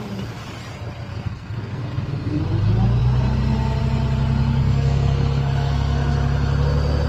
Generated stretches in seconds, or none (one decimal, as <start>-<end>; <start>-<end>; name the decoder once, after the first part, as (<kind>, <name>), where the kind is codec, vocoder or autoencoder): 1.1-2.4 (codec, SNAC); 4.6-6.1